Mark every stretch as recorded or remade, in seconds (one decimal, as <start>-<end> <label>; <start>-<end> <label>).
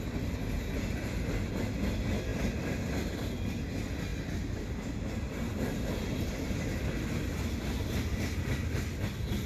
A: 0.0-9.5 recorded